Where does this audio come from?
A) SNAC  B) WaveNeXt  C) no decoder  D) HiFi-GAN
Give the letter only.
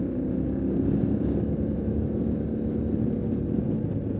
C